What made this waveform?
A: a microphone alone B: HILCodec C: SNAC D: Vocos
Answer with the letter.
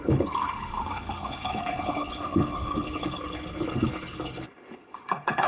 B